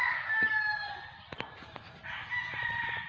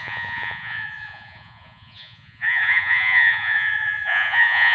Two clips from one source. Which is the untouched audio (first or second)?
first